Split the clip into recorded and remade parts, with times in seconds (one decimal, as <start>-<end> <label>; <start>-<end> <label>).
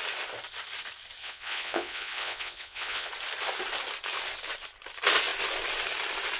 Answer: 0.0-1.2 recorded; 1.2-3.1 remade; 3.1-6.4 recorded